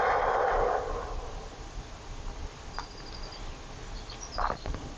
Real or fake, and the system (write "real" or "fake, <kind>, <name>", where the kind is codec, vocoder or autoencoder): real